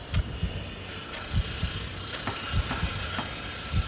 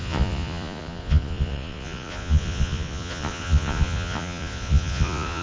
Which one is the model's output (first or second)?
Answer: second